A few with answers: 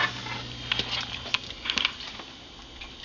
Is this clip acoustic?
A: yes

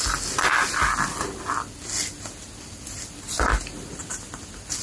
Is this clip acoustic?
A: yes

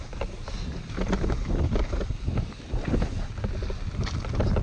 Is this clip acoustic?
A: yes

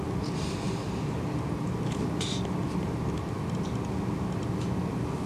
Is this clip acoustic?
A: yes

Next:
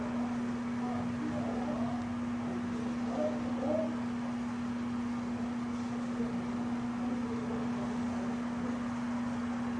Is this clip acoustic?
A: yes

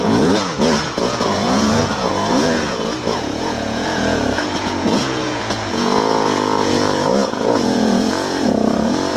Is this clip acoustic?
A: no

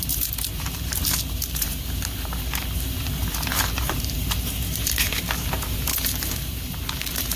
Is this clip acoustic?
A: no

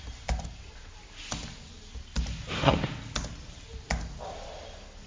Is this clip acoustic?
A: yes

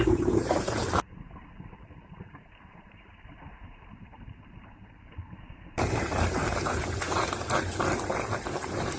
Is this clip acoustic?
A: no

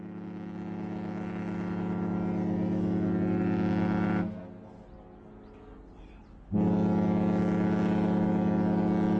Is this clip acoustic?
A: yes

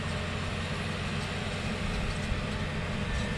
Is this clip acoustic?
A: yes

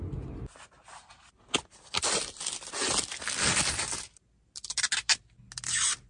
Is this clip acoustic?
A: yes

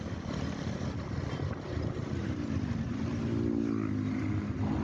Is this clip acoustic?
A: yes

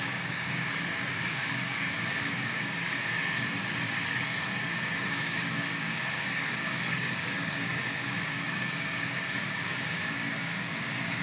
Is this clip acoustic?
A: no